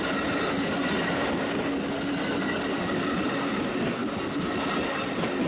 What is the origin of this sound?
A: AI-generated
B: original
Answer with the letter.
B